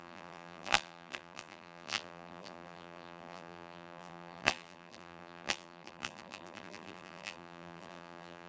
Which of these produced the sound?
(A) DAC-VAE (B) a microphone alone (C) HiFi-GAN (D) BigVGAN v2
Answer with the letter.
D